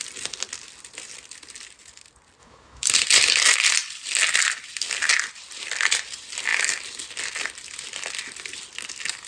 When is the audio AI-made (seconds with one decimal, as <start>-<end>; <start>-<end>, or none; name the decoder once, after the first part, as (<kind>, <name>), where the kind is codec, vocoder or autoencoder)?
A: 2.4-2.9 (autoencoder, DAC-VAE)